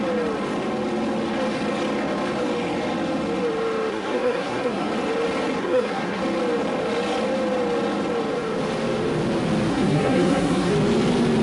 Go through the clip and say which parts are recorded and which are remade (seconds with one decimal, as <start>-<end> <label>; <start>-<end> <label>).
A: 0.0-3.9 recorded; 3.9-4.9 remade; 4.9-5.6 recorded; 5.6-6.2 remade; 6.2-9.7 recorded; 9.7-10.7 remade; 10.7-11.4 recorded